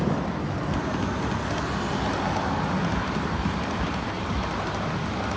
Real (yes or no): yes